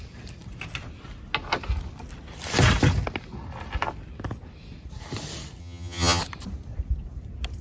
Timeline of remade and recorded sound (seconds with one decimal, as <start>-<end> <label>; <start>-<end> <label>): 0.0-5.6 recorded; 5.6-6.2 remade; 6.2-7.6 recorded